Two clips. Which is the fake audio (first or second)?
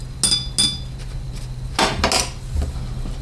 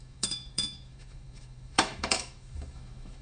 second